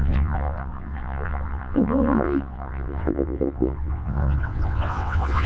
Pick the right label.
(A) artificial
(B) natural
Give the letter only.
A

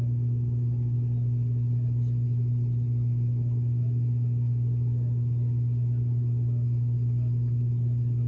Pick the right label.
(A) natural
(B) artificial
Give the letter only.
A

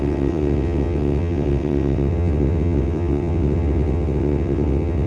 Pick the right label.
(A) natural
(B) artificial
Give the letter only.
B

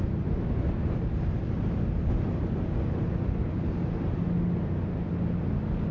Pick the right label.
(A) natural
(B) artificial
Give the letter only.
A